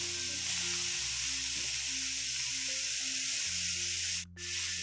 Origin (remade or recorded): recorded